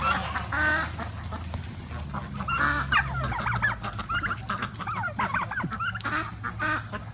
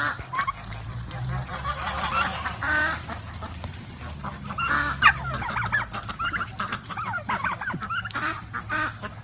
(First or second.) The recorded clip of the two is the first